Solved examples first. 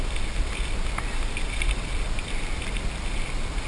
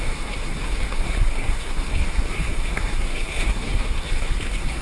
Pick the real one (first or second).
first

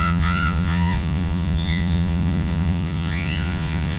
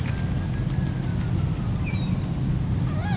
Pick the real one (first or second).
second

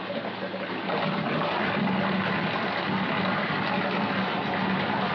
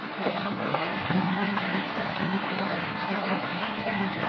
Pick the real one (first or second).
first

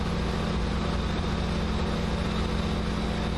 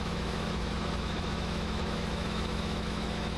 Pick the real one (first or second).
first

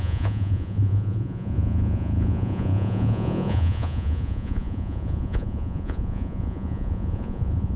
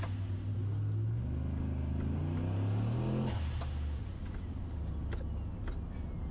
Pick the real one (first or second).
second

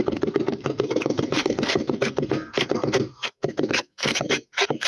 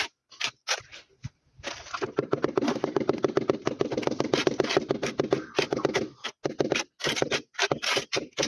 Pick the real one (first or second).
second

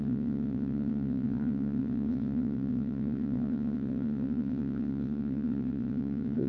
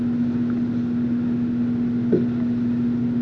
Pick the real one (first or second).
second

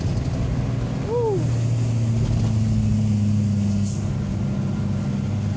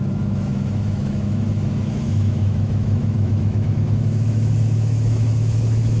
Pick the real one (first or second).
first